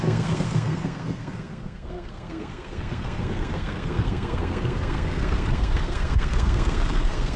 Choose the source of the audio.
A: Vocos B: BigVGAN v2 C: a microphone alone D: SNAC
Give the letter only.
D